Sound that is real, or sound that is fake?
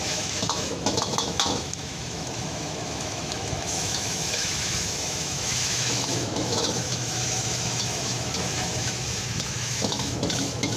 fake